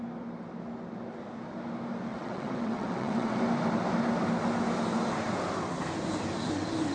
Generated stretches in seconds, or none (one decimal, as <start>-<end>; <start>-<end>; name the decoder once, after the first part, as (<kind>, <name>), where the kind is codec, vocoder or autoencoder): 2.1-3.4 (vocoder, WaveNeXt)